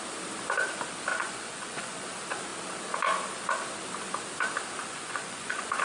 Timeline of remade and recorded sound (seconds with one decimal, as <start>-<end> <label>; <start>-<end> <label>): 0.0-1.1 recorded; 1.1-2.1 remade; 2.1-4.8 recorded; 4.8-5.8 remade